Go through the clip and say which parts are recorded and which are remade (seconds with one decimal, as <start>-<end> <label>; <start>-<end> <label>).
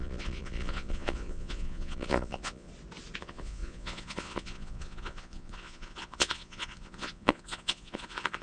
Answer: 0.0-2.7 remade; 2.7-3.2 recorded; 3.2-8.4 remade